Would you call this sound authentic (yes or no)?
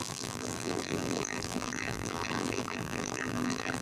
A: no